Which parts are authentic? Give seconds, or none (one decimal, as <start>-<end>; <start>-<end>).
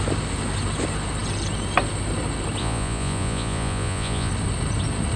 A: 0.0-2.6; 4.3-5.2